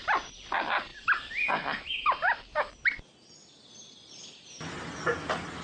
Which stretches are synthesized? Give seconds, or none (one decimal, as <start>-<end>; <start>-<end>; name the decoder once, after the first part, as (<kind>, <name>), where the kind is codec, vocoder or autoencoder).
none